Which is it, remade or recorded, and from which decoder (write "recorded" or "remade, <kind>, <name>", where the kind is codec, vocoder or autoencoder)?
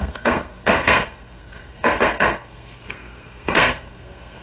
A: remade, codec, SNAC